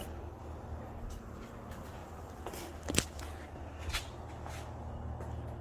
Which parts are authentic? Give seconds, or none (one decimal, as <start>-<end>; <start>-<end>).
0.0-5.6

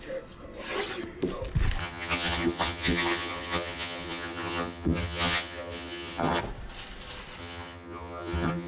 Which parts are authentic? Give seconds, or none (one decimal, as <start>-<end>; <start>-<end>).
0.0-1.8; 6.4-7.4

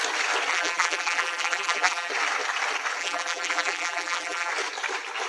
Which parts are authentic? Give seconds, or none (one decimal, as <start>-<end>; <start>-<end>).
0.0-0.5; 2.1-3.0; 4.5-5.3

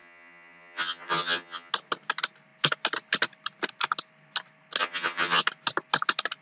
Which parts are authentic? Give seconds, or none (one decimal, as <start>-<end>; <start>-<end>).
1.7-4.8; 5.4-6.4

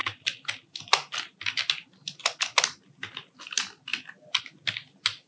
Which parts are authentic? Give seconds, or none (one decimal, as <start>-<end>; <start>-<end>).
0.0-3.9; 4.4-5.3